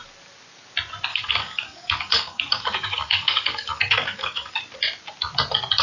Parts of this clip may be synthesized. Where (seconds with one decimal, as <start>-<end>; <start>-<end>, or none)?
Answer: 1.1-4.6